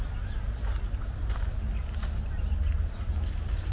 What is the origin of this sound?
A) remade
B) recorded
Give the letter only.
B